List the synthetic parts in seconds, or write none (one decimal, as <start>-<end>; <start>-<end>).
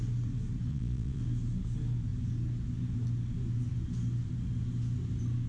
0.7-1.2